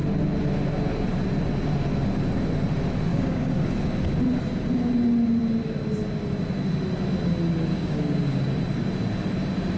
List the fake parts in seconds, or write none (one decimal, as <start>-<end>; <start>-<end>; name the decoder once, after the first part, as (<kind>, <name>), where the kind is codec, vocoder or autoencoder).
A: 3.1-3.7 (codec, DAC); 7.7-8.6

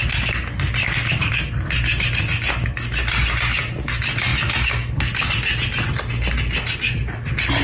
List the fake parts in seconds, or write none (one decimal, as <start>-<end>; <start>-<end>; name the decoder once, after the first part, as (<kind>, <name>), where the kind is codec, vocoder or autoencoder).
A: 0.8-1.3 (codec, DAC)

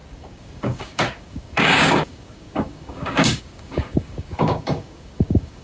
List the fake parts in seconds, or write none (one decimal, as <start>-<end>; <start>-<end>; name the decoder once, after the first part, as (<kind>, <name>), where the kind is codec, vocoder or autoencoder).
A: 0.0-5.6 (codec, DAC)

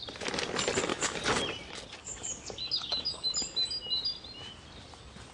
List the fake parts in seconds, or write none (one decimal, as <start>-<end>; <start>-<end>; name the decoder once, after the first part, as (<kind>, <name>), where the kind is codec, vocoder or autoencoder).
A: 0.9-1.4 (codec, DAC); 2.0-3.3